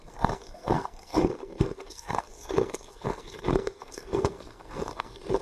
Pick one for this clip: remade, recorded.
remade